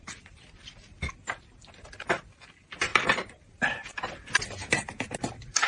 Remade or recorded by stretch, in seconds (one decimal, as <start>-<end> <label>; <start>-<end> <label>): 0.0-2.9 recorded; 2.9-3.4 remade; 3.4-5.7 recorded